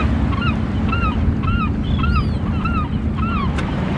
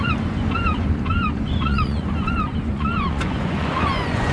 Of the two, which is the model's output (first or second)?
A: second